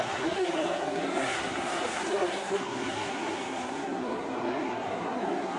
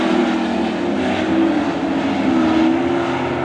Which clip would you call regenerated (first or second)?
first